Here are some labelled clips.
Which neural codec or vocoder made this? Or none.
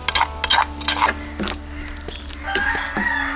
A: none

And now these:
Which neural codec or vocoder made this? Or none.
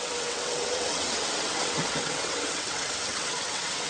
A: vocoder, WaveNeXt